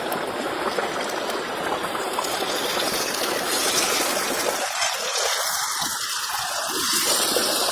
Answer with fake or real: fake